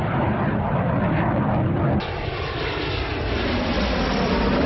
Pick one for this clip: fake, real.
real